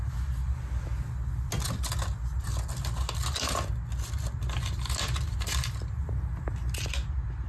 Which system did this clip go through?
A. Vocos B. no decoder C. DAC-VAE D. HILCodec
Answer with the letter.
B